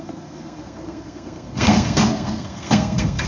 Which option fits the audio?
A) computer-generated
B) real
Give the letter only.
A